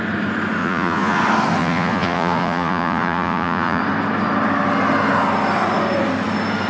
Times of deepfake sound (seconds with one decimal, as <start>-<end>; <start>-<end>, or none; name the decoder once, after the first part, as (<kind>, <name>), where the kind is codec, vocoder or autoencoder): 0.6-1.2 (vocoder, Vocos); 1.6-3.8